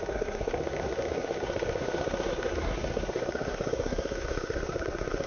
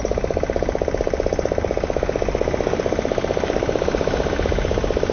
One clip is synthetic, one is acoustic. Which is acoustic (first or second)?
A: second